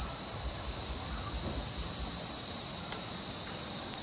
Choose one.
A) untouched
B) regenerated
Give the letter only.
A